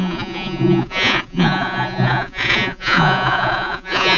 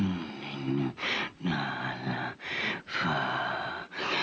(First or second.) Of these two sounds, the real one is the second